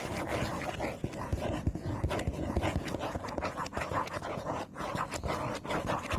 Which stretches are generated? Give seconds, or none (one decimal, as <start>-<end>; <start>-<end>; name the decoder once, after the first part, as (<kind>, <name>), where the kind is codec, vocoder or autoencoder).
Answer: 1.3-4.9 (vocoder, Vocos)